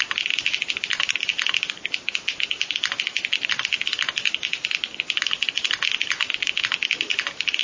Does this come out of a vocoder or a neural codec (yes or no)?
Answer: no